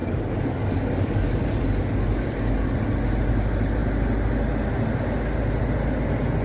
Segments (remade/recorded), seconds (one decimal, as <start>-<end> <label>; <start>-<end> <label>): 0.0-2.8 remade; 2.8-6.4 recorded